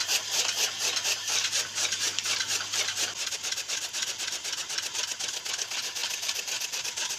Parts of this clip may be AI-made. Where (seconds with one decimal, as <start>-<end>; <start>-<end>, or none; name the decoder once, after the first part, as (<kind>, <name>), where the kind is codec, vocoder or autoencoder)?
6.0-6.8 (vocoder, BigVGAN v2)